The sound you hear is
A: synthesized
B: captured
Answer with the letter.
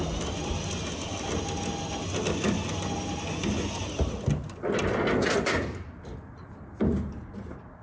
B